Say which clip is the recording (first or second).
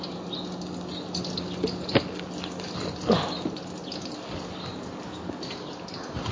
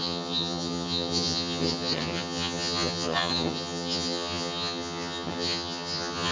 first